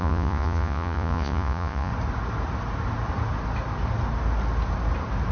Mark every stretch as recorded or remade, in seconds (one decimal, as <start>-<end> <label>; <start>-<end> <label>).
0.0-1.9 remade; 1.9-5.3 recorded